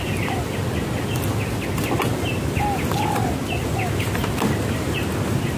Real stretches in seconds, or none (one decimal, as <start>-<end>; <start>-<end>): 0.0-5.6